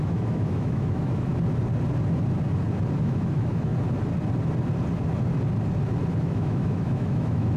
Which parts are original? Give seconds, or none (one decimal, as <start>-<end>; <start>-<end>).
1.3-3.0; 3.7-6.2